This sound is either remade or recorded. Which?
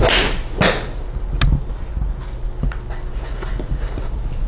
recorded